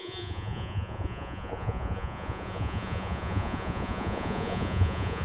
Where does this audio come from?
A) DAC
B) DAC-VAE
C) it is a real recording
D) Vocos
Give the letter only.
D